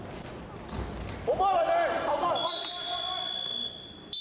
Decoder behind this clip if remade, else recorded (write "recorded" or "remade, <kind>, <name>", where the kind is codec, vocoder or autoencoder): recorded